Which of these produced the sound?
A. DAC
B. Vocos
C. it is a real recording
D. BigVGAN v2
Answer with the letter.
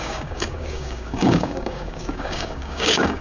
A